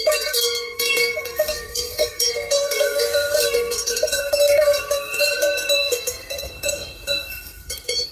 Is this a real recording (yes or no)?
no